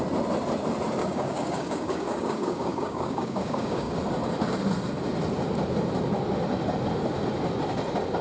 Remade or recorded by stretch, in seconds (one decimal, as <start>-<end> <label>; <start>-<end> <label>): 0.0-1.0 recorded; 1.0-4.0 remade; 4.0-8.2 recorded